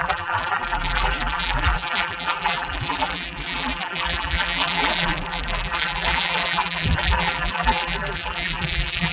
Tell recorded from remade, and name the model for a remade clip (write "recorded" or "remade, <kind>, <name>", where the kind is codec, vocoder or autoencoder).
remade, vocoder, BigVGAN v2